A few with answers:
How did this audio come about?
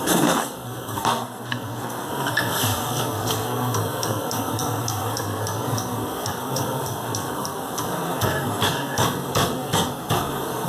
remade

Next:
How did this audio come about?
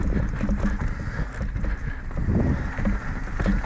recorded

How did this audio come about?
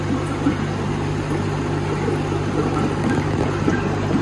recorded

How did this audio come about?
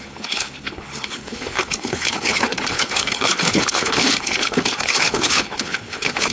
remade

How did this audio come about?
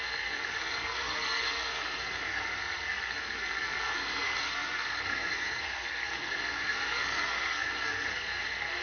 remade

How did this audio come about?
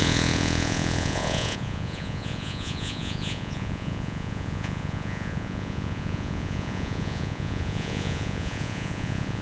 remade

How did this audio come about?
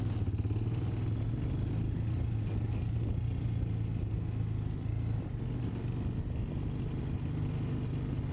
recorded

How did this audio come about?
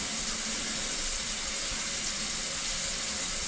recorded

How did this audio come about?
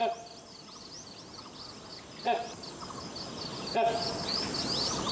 recorded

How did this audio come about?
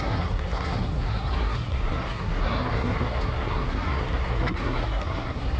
remade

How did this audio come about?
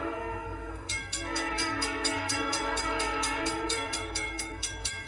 remade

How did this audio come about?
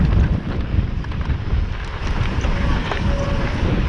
recorded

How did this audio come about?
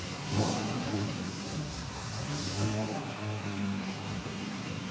remade